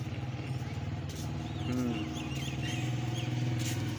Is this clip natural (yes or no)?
yes